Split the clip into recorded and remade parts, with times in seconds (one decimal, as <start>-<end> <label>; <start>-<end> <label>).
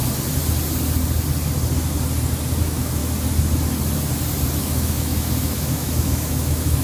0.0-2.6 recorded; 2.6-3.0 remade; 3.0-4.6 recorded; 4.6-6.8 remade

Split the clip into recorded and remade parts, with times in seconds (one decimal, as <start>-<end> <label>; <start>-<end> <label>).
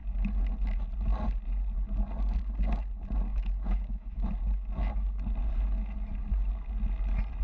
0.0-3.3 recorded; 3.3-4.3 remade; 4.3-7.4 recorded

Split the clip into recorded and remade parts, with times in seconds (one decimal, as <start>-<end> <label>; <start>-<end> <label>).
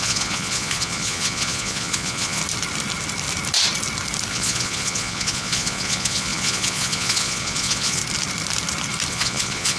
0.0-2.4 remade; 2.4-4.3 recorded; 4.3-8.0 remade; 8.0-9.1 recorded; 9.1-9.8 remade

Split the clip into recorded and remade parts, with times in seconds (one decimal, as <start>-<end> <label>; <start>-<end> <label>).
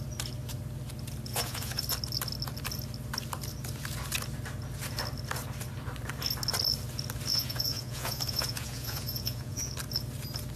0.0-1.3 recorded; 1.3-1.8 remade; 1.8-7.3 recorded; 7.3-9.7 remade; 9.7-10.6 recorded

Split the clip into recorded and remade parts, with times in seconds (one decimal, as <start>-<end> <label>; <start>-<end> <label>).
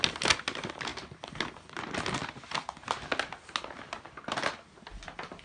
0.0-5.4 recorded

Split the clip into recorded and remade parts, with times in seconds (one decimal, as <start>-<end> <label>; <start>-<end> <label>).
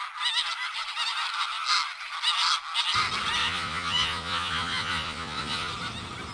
0.0-3.4 recorded; 3.4-5.7 remade; 5.7-6.3 recorded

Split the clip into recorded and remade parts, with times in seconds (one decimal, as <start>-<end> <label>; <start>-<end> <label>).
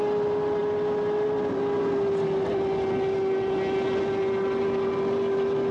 0.0-5.7 recorded